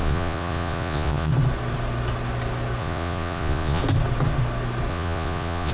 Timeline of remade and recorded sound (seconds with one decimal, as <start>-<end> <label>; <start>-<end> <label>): 0.0-1.3 remade; 1.3-2.8 recorded; 2.8-3.8 remade; 3.8-4.9 recorded; 4.9-5.7 remade